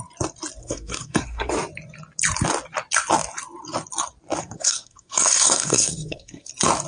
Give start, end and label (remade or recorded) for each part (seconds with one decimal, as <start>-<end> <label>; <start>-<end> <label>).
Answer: 0.0-0.6 recorded; 0.6-1.5 remade; 1.5-4.4 recorded; 4.4-6.5 remade; 6.5-6.9 recorded